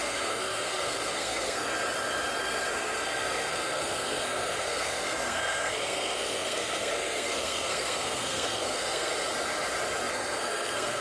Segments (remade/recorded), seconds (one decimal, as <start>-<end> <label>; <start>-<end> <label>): 0.0-1.7 remade; 1.7-2.4 recorded; 2.4-9.1 remade; 9.1-10.1 recorded; 10.1-11.0 remade